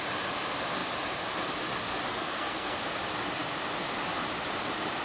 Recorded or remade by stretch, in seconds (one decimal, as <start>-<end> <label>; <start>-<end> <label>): 0.0-2.1 recorded; 2.1-2.8 remade; 2.8-5.0 recorded